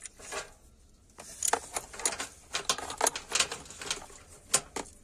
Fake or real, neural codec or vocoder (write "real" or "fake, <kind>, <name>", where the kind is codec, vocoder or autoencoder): real